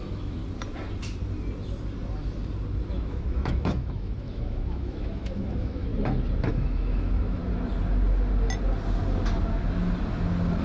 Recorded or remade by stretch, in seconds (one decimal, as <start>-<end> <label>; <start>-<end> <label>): 0.0-0.4 remade; 0.4-2.9 recorded; 2.9-5.9 remade; 5.9-6.5 recorded; 6.5-7.4 remade; 7.4-10.6 recorded